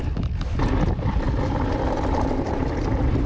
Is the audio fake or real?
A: real